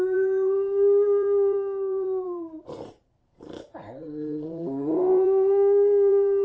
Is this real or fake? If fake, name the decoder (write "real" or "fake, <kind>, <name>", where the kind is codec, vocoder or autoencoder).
fake, vocoder, BigVGAN v2